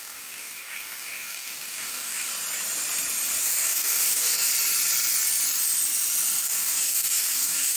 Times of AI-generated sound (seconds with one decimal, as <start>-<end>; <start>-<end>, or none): 0.0-2.3; 3.4-4.5; 6.4-7.8